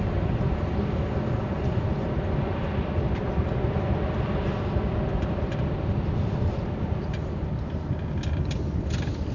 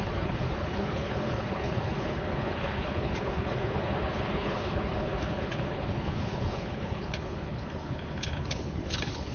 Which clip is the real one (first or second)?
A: first